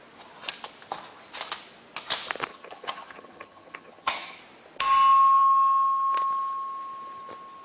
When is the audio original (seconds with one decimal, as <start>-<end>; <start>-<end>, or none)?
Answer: 0.0-2.5; 4.4-7.6